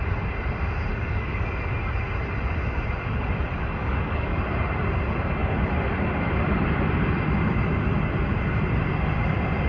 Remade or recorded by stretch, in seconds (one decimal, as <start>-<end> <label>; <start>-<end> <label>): 0.0-0.9 recorded; 0.9-1.7 remade; 1.7-3.8 recorded; 3.8-4.4 remade; 4.4-9.7 recorded